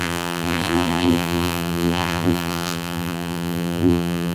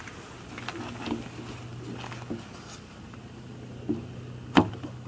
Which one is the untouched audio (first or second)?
second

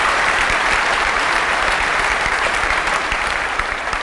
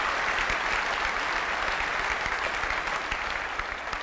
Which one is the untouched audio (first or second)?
second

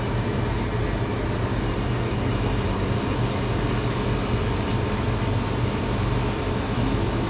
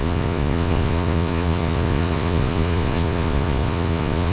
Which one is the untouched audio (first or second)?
first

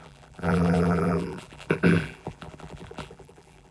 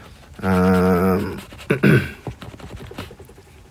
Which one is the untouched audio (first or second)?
second